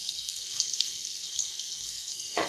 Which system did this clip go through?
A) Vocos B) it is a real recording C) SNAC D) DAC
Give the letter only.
C